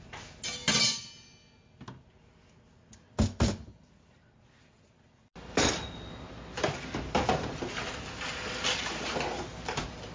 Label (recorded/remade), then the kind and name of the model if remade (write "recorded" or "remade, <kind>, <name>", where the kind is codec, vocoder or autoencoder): recorded